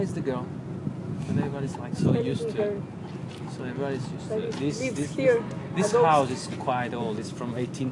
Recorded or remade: recorded